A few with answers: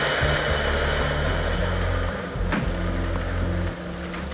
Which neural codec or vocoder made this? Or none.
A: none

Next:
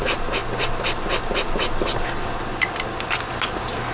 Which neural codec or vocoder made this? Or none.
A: none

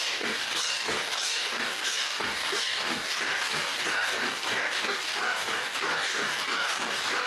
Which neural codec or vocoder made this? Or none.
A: codec, DAC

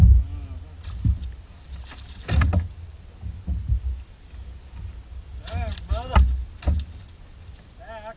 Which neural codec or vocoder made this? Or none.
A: none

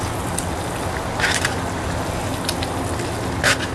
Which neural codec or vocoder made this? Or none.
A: none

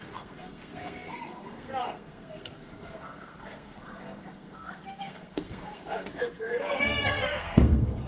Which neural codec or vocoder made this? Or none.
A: codec, SNAC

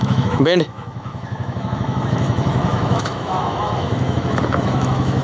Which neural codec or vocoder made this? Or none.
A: autoencoder, DAC-VAE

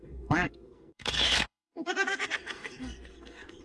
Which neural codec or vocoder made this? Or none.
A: codec, SNAC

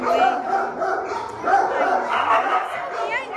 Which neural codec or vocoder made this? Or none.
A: none